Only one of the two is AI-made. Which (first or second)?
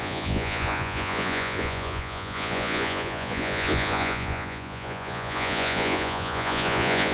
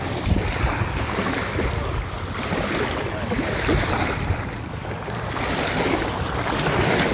first